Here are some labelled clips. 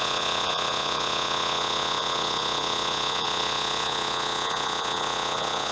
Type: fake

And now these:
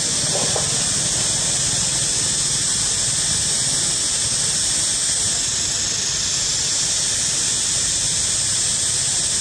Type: real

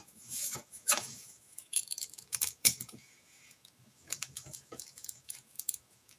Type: fake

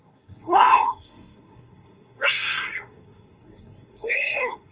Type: fake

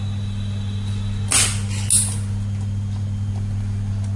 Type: real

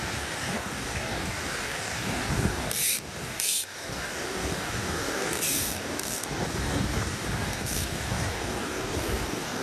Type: fake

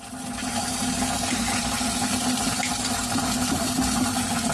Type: real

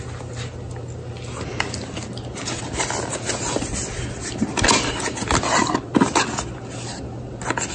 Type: real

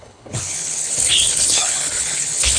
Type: fake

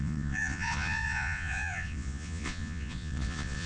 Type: fake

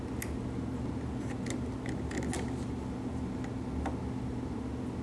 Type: real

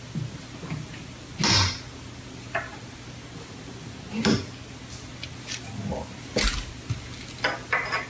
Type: real